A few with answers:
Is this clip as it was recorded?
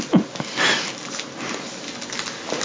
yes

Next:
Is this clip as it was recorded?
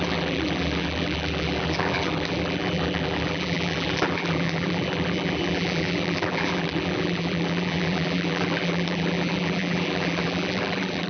no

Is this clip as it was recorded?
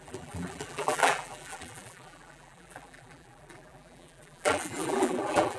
no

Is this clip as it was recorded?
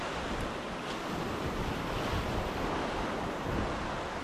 yes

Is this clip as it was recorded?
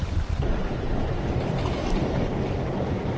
yes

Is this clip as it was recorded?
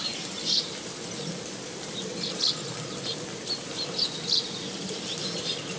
yes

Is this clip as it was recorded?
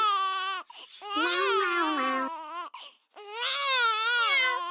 yes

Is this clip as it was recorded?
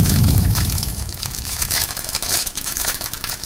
no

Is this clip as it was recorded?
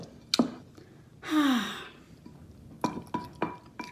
yes